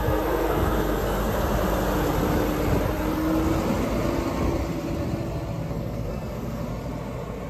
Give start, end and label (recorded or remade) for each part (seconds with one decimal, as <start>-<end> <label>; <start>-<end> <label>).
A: 0.0-1.2 remade; 1.2-5.7 recorded; 5.7-6.7 remade; 6.7-7.5 recorded